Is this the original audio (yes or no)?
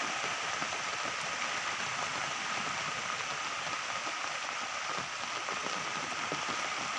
yes